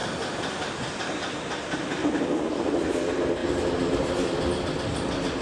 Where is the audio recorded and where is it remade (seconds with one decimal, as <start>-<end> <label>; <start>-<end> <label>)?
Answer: 0.0-0.9 remade; 0.9-2.0 recorded; 2.0-2.8 remade; 2.8-3.4 recorded; 3.4-4.2 remade; 4.2-5.4 recorded